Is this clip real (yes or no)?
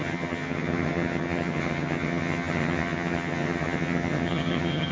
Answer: no